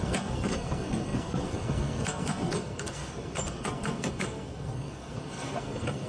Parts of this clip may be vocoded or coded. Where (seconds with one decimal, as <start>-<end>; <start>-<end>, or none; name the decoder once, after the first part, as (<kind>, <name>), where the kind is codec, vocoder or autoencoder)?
0.0-6.1 (codec, SNAC)